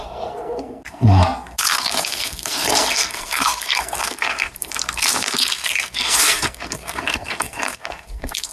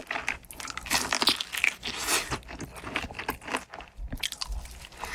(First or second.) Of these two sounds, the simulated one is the first